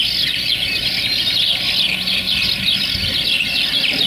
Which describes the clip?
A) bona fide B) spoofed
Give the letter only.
A